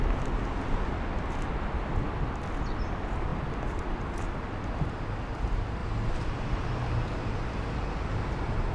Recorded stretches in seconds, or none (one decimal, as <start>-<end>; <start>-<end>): 0.0-3.3; 3.9-5.8; 8.1-8.7